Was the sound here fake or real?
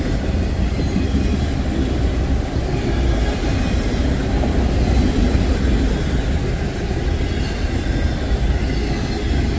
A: real